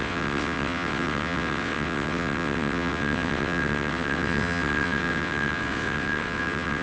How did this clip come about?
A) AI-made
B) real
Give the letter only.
A